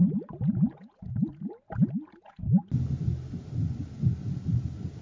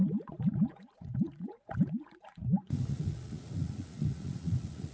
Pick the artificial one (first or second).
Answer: second